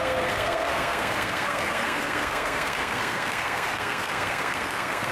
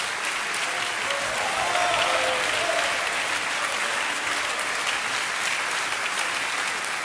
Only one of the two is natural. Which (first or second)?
second